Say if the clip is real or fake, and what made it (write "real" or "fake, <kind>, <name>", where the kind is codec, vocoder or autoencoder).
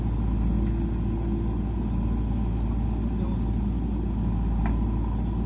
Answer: real